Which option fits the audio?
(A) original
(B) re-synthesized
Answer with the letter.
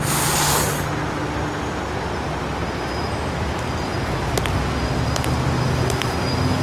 A